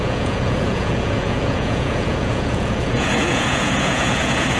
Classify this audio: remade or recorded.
remade